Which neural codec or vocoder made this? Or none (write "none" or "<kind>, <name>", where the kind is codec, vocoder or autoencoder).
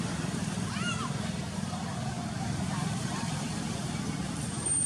vocoder, BigVGAN v2